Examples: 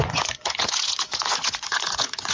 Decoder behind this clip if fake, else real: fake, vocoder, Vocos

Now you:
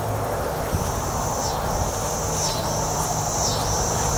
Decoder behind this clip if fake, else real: real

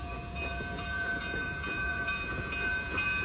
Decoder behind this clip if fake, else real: fake, vocoder, Vocos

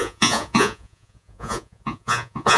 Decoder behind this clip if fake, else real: fake, vocoder, Vocos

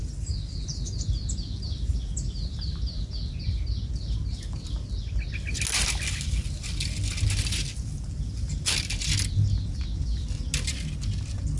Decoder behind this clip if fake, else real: real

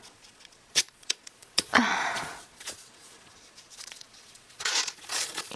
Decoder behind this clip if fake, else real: fake, vocoder, Vocos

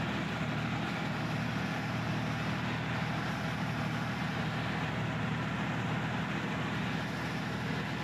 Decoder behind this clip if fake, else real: real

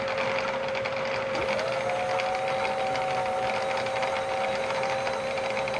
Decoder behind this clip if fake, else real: real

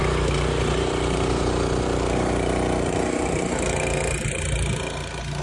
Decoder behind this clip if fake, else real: real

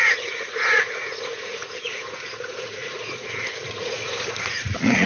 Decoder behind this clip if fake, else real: fake, vocoder, Vocos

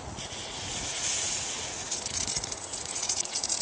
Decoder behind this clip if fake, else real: fake, vocoder, Vocos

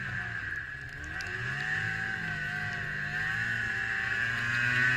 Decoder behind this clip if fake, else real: real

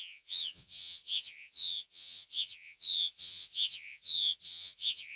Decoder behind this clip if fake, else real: fake, vocoder, Vocos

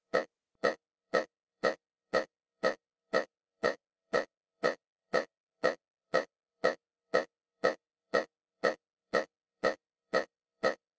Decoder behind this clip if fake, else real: fake, vocoder, Vocos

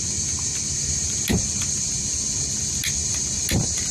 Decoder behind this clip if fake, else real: real